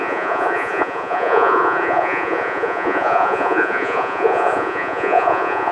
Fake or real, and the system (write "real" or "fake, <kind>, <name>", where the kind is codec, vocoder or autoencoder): fake, vocoder, Vocos